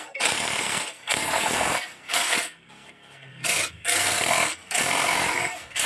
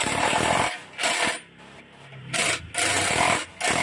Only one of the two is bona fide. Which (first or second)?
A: second